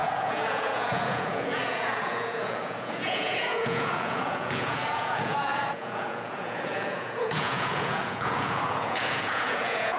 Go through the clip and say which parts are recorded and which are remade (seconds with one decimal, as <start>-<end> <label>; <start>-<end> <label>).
0.0-10.0 remade